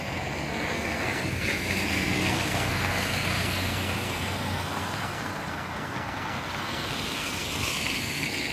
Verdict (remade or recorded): remade